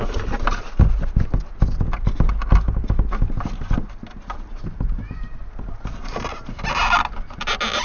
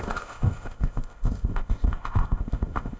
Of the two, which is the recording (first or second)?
first